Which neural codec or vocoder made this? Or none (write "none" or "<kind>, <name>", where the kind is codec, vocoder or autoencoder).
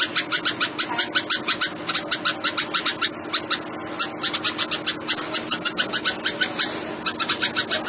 none